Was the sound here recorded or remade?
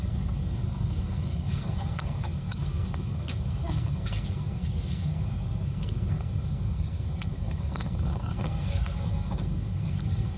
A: remade